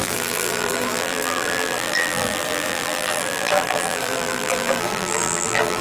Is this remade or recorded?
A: remade